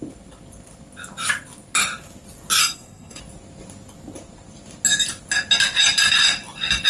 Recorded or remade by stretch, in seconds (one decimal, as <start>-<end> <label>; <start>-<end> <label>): 0.0-2.6 recorded; 2.6-3.2 remade; 3.2-6.9 recorded